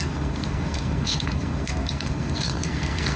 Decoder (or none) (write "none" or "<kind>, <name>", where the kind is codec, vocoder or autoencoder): codec, SNAC